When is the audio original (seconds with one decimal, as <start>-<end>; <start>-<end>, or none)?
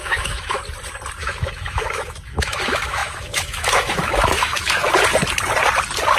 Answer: 0.6-1.2; 4.8-6.2